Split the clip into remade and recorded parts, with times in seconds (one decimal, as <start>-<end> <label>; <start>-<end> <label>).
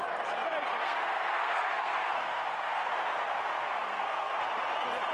0.0-0.8 recorded; 0.8-2.9 remade; 2.9-3.6 recorded; 3.6-4.4 remade; 4.4-5.1 recorded